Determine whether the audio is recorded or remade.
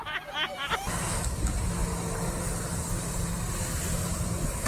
recorded